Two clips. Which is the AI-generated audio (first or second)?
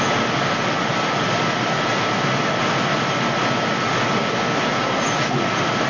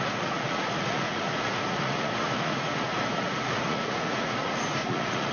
second